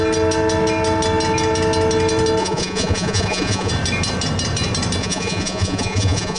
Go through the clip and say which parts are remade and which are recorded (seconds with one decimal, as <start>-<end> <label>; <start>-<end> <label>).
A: 0.0-2.4 recorded; 2.4-3.7 remade; 3.7-5.0 recorded; 5.0-6.4 remade